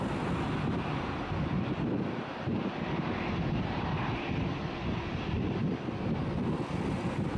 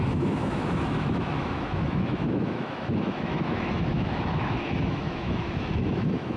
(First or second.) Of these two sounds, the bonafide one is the first